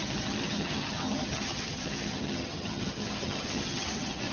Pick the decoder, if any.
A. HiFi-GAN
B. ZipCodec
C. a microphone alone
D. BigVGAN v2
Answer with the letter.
A